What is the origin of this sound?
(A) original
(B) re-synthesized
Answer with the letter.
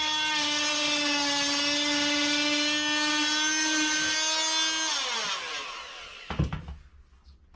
A